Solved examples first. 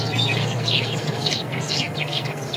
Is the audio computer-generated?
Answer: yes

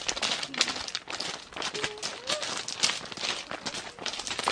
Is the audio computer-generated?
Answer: no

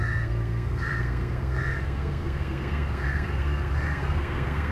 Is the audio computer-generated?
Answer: yes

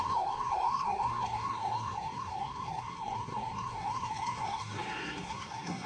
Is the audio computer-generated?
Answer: yes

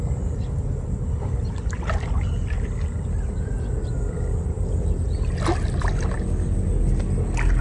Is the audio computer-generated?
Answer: no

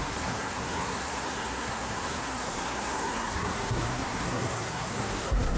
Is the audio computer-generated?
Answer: yes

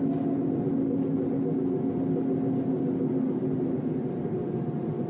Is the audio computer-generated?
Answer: no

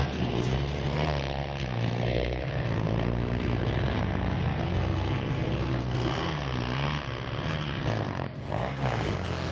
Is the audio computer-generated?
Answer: yes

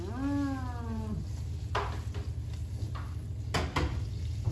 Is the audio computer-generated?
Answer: no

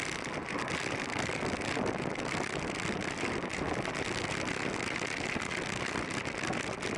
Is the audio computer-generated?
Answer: no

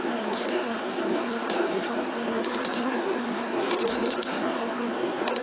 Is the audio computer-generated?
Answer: yes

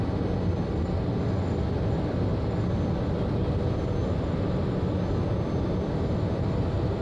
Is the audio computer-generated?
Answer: no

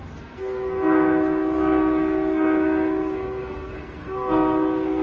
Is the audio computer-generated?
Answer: yes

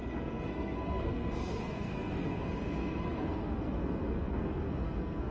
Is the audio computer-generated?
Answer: yes